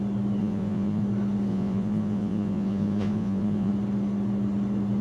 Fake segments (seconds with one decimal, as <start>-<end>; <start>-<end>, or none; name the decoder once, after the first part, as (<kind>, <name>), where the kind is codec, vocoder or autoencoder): 0.4-1.0 (vocoder, Vocos); 1.5-3.7